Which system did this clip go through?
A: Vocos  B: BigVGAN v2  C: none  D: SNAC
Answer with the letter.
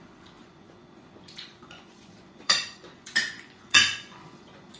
A